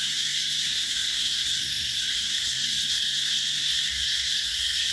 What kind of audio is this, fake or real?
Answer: fake